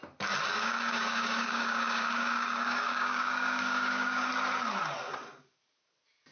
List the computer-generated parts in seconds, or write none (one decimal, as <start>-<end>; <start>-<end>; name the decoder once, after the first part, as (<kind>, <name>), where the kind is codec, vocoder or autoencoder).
0.5-4.3 (codec, DAC)